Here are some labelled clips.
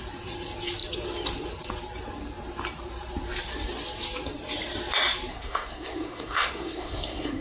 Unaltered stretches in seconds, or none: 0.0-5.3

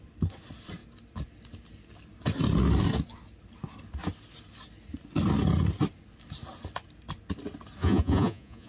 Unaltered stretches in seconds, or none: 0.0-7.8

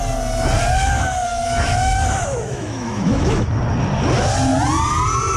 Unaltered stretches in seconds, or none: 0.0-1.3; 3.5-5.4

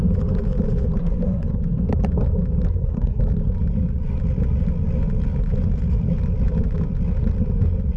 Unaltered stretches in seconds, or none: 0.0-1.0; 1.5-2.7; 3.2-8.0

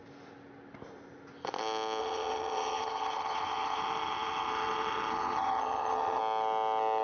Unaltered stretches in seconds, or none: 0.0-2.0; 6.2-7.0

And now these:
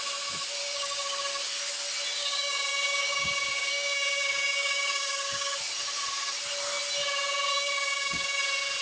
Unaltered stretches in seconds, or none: 0.0-0.6; 1.3-2.2; 5.6-7.5; 8.4-8.8